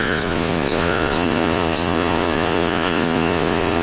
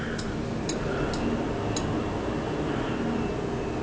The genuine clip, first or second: second